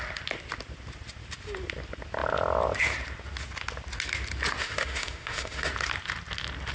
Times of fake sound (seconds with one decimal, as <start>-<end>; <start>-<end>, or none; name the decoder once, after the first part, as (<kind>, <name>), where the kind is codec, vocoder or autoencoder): 4.6-5.7 (autoencoder, DAC-VAE)